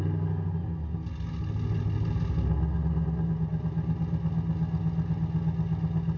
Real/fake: real